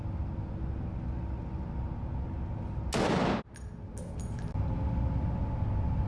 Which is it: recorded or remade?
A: recorded